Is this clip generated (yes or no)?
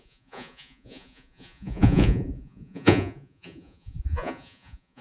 yes